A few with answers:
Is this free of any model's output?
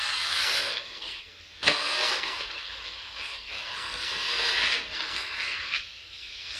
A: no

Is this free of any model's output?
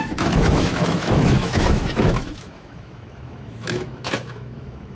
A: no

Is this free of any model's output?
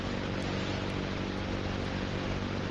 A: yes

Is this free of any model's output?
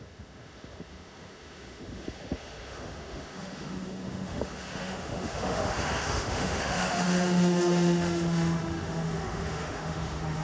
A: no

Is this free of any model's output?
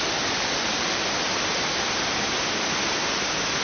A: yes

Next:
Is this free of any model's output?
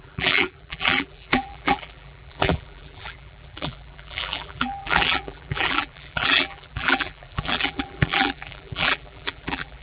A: no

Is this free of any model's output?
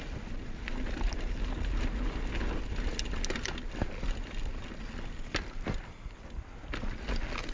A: yes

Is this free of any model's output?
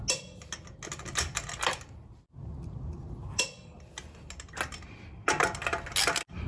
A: yes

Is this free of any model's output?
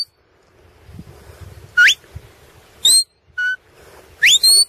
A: yes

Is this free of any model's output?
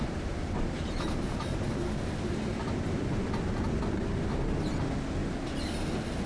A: yes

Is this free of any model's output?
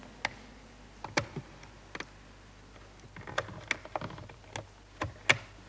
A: yes